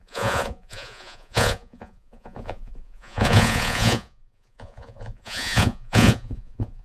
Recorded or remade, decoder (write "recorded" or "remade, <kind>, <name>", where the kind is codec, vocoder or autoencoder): remade, vocoder, Vocos